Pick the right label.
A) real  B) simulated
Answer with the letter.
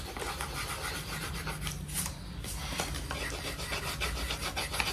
A